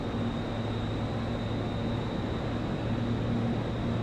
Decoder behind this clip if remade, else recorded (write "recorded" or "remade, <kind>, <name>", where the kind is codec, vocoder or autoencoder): recorded